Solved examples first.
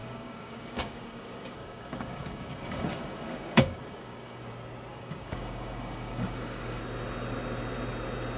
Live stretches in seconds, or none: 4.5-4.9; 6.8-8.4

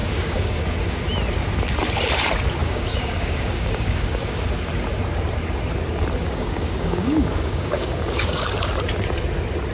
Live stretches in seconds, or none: 0.6-2.6; 4.4-6.2; 8.5-9.7

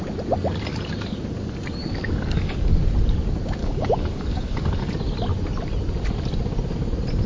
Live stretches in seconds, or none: 0.0-1.8; 2.8-3.6; 4.8-7.3

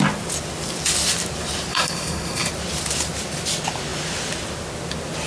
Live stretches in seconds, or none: 0.0-1.7; 2.5-5.3

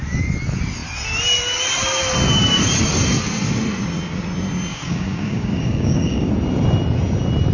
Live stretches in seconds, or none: 0.0-4.7; 6.3-7.5

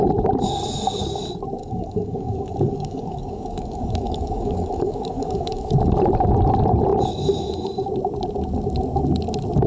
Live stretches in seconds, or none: 0.0-1.6; 5.7-9.7

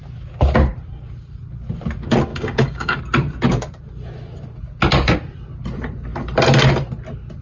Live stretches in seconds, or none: 0.0-2.3; 3.0-7.4